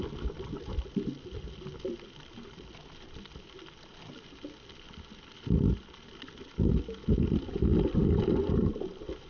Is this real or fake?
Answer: real